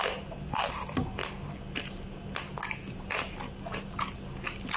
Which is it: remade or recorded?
recorded